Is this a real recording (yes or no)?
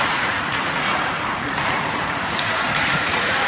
no